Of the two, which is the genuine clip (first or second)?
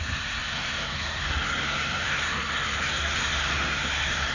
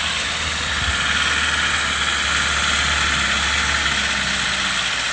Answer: second